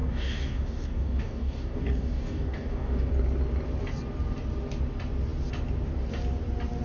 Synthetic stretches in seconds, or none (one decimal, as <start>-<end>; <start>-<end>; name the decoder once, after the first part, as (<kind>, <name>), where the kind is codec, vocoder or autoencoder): 0.0-3.1 (codec, DAC)